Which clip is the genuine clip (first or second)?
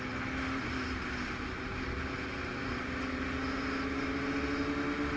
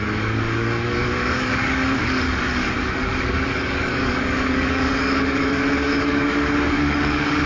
first